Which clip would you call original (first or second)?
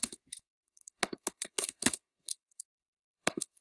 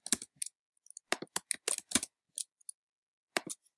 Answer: second